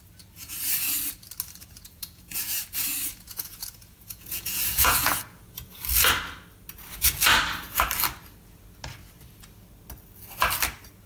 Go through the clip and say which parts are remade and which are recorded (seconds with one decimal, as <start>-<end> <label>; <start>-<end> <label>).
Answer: 0.0-1.6 recorded; 1.6-2.6 remade; 2.6-3.1 recorded; 3.1-5.8 remade; 5.8-11.1 recorded